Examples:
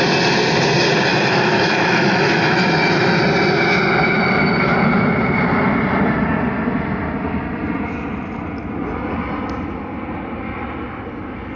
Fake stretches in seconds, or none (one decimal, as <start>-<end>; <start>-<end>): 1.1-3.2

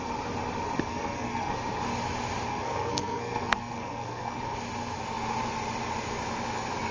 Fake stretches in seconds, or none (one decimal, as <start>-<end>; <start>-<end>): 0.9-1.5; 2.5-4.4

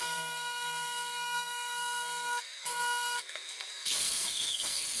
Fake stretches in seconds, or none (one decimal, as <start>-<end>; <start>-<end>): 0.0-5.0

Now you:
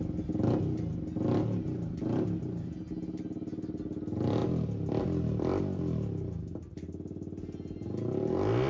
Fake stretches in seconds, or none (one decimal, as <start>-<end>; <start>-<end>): none

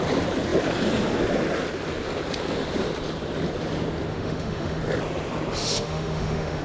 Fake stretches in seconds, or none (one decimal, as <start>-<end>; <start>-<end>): 4.1-4.8; 5.6-6.6

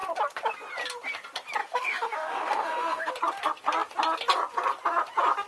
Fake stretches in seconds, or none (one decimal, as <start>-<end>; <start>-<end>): 1.6-3.1

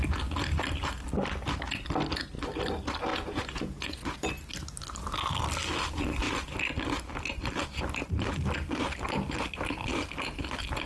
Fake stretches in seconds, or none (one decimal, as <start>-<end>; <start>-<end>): 3.1-4.3